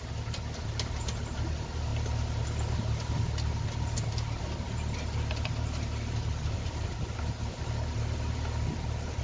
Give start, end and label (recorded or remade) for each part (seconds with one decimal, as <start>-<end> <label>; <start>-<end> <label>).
0.0-9.2 recorded